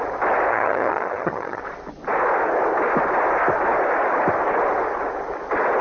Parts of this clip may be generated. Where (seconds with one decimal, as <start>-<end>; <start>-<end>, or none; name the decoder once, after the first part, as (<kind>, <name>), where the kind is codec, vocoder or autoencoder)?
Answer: 0.5-1.6 (vocoder, HiFi-GAN)